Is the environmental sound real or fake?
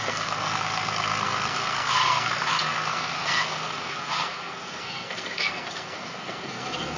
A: fake